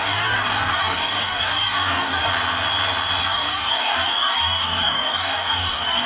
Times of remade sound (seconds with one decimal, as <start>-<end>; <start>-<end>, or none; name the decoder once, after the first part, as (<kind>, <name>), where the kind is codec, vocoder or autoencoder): 0.0-2.3 (codec, DAC); 3.2-6.1